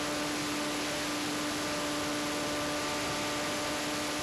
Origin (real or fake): real